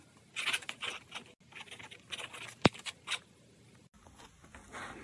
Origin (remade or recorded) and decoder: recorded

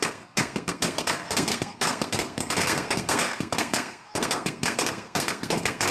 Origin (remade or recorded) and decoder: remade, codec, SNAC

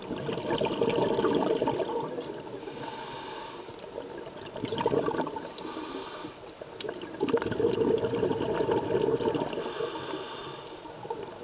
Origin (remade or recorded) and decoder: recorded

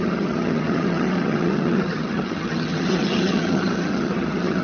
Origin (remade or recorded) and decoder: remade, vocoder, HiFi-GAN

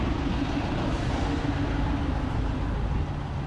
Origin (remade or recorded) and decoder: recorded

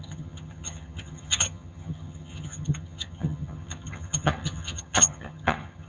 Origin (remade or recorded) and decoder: remade, vocoder, HiFi-GAN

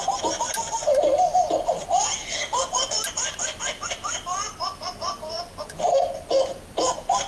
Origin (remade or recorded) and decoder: recorded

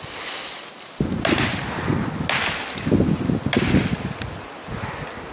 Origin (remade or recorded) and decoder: recorded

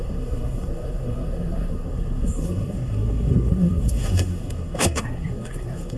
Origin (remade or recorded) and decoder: remade, codec, SNAC